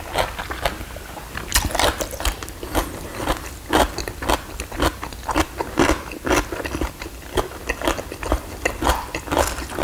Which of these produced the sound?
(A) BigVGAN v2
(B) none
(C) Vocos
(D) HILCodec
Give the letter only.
B